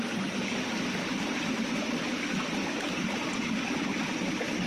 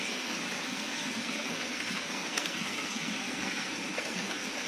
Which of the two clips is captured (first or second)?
first